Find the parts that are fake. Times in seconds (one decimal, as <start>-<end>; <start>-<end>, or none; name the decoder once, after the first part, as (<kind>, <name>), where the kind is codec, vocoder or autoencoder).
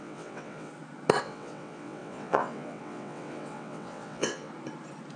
0.0-0.7 (vocoder, WaveNeXt); 1.2-4.5